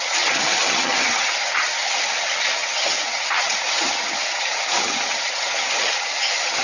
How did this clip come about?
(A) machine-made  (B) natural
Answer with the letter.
A